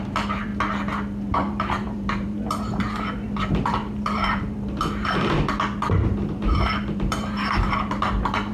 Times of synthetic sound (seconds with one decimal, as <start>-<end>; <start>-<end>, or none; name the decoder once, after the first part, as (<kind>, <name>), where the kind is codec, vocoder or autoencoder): 0.0-0.5 (vocoder, BigVGAN v2); 1.3-8.5

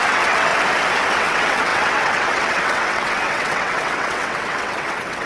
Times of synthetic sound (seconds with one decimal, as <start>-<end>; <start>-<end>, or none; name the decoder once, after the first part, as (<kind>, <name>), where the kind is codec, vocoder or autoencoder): 0.0-0.5 (vocoder, WaveNeXt); 1.1-5.3

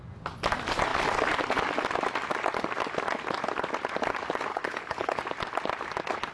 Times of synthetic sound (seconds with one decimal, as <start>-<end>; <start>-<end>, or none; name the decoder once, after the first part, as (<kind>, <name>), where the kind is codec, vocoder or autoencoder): 4.5-5.2 (codec, HILCodec)

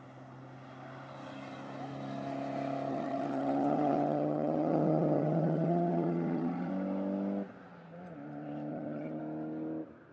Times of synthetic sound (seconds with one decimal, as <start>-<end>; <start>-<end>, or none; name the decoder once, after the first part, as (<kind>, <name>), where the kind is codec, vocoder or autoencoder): 2.9-6.7 (vocoder, HiFi-GAN); 8.7-9.2

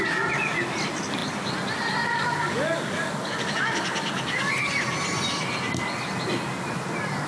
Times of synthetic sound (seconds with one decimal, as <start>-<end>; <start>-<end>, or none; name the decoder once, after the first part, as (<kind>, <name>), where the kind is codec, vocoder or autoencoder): 2.1-4.5 (codec, DAC)

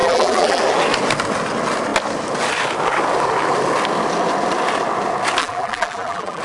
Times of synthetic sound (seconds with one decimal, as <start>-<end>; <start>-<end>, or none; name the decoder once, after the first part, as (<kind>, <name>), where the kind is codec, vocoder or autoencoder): 0.0-0.6 (vocoder, BigVGAN v2); 5.4-6.4

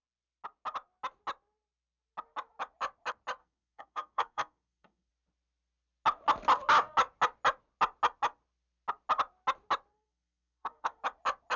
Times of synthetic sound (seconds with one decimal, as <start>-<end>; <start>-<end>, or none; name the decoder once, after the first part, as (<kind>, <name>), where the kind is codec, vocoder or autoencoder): 3.4-5.1 (codec, SNAC); 9.9-11.0